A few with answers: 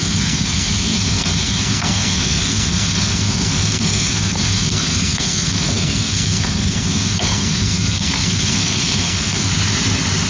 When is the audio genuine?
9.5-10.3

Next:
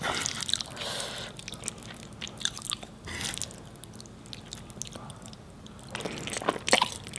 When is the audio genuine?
1.4-5.1

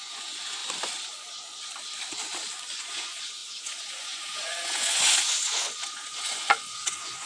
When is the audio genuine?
0.6-2.8